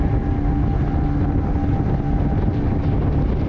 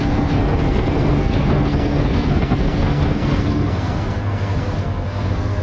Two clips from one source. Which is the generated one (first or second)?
second